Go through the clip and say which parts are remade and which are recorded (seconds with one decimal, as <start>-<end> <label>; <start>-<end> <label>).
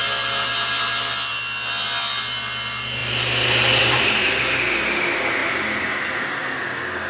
0.0-7.1 recorded